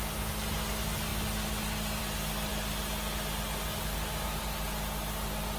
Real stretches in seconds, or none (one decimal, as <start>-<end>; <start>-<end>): 0.0-5.6